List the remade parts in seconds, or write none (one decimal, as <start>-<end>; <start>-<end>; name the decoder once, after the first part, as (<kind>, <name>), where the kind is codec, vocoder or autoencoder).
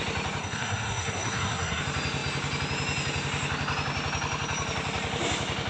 0.4-1.8 (codec, SNAC)